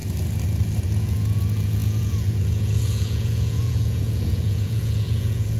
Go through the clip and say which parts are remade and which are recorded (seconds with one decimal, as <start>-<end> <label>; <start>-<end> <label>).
0.0-0.8 recorded; 0.8-5.6 remade